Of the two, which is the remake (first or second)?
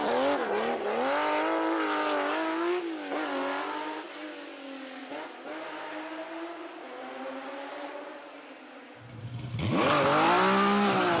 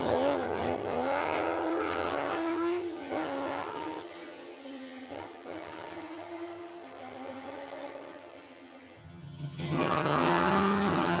second